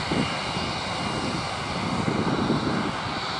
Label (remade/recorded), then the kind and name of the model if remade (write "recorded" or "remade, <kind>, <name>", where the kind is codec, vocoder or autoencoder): recorded